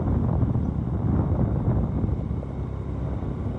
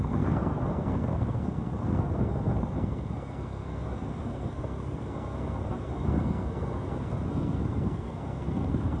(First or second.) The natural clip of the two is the first